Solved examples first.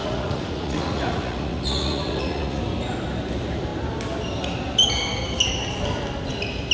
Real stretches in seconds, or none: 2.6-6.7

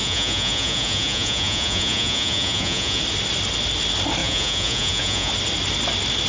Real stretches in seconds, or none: 3.0-4.2; 5.3-6.3

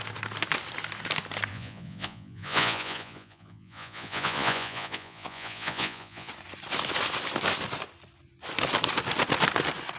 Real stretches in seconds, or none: 0.0-1.5; 6.3-10.0